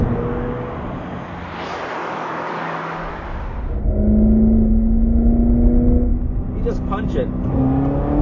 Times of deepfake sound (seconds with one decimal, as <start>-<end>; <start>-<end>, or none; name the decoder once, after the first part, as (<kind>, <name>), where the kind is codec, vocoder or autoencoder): 2.0-3.1 (codec, DAC)